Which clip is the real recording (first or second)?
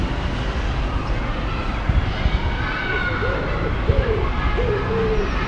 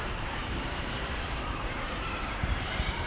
first